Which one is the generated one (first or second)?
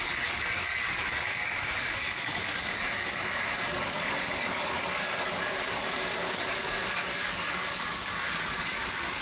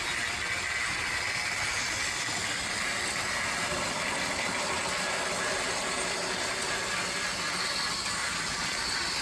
first